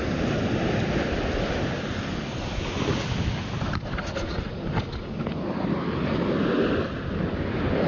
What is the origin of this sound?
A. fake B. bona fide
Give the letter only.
B